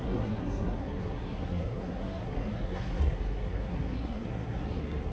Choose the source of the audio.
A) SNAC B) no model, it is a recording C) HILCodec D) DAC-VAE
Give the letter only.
A